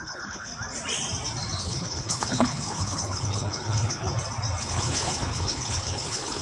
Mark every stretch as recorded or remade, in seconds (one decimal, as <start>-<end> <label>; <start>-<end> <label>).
0.0-0.5 remade; 0.5-1.6 recorded; 1.6-4.1 remade; 4.1-4.6 recorded; 4.6-6.4 remade